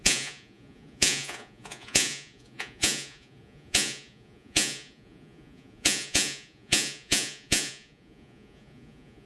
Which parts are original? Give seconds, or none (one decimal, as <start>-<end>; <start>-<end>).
none